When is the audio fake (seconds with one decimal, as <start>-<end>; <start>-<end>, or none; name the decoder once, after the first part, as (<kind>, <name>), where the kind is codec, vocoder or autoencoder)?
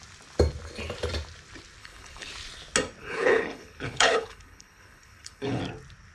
1.8-2.3 (codec, HILCodec); 3.0-5.6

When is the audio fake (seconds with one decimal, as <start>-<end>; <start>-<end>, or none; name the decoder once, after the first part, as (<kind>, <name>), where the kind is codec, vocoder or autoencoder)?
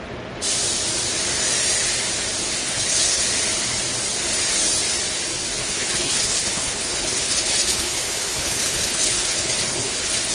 2.6-3.2 (codec, HILCodec); 5.6-10.3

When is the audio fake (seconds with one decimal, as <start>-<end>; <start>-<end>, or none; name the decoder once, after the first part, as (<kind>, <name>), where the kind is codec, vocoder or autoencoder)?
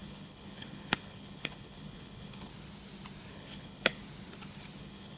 0.0-2.5 (codec, HILCodec); 3.3-4.0; 4.8-5.2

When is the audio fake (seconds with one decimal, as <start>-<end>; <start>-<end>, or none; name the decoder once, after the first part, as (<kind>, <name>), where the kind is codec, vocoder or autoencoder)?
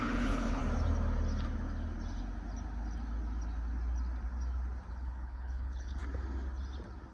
0.0-0.6 (codec, HILCodec); 4.9-6.0